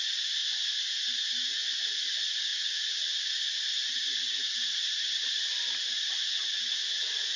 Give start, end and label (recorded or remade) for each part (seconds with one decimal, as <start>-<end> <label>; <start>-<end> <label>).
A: 0.0-0.4 remade; 0.4-2.1 recorded; 2.1-7.4 remade

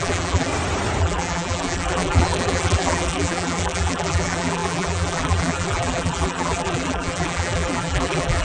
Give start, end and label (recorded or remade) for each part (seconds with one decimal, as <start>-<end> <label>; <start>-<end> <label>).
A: 0.0-0.5 remade; 0.5-1.0 recorded; 1.0-8.4 remade

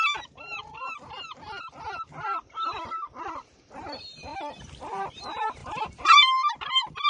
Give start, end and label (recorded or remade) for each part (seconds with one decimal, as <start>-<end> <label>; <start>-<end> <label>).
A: 0.0-0.6 remade; 0.6-1.6 recorded; 1.6-4.3 remade; 4.3-4.8 recorded; 4.8-7.1 remade

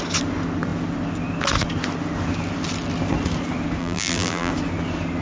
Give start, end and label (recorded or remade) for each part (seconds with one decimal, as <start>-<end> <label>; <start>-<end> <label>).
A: 0.0-3.8 recorded; 3.8-4.5 remade; 4.5-5.2 recorded

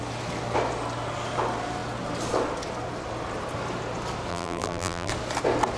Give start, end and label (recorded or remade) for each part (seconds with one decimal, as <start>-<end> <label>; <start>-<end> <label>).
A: 0.0-4.3 recorded; 4.3-5.1 remade; 5.1-5.8 recorded